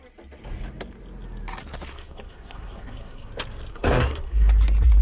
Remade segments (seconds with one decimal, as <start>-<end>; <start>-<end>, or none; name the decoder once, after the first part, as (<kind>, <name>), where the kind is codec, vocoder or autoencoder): 1.9-3.3 (codec, SNAC); 3.7-4.5

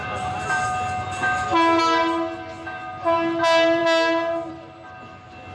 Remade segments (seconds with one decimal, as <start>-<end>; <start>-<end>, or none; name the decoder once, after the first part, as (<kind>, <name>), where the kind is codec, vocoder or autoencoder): none